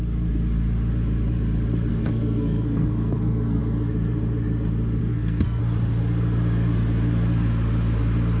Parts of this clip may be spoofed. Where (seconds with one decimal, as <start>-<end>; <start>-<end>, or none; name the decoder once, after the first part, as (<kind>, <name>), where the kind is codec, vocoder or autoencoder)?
1.9-3.6 (codec, SNAC); 5.0-5.6